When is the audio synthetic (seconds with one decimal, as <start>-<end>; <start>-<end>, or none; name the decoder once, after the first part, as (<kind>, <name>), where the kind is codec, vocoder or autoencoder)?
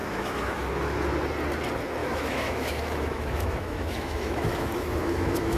0.0-0.7 (autoencoder, DAC-VAE); 2.0-5.6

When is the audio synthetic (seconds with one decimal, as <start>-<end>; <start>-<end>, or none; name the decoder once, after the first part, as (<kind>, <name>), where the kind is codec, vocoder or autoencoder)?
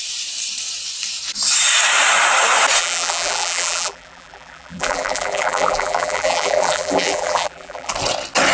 2.8-7.9 (vocoder, BigVGAN v2)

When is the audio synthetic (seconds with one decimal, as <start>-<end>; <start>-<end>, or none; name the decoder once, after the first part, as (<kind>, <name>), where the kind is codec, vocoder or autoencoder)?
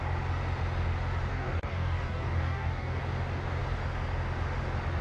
1.3-3.0 (codec, DAC)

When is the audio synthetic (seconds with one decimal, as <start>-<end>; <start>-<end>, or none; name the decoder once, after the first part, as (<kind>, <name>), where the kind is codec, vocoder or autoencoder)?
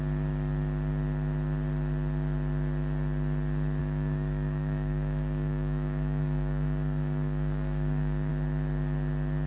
3.8-8.3 (codec, DAC)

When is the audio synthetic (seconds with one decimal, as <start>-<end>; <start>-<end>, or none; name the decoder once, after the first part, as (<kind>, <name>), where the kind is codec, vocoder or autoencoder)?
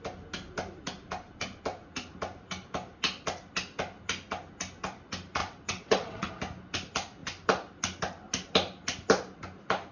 5.4-6.3 (vocoder, WaveNeXt)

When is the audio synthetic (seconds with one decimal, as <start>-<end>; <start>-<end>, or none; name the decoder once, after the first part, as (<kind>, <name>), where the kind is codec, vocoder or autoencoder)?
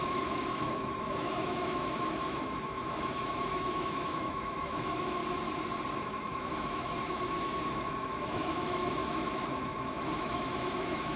0.0-5.2 (autoencoder, DAC-VAE); 6.0-11.2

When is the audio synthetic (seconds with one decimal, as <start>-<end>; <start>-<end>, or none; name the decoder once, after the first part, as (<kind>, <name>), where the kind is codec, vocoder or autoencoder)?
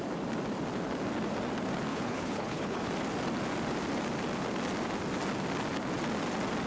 1.9-2.9 (codec, HILCodec)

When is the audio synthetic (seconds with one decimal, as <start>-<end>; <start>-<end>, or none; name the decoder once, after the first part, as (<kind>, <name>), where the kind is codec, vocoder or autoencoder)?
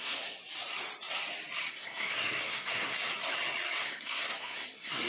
0.0-0.4 (codec, SNAC); 1.7-3.1; 3.8-5.1